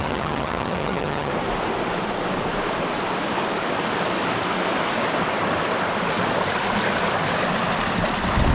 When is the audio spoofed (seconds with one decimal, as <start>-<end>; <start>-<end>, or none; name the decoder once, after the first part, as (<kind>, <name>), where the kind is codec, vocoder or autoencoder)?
0.0-1.3 (vocoder, HiFi-GAN)